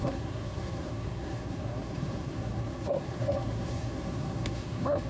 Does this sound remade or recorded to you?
remade